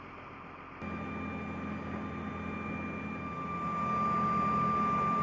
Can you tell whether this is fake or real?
real